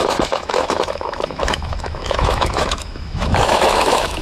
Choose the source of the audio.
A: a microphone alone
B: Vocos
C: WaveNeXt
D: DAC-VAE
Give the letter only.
D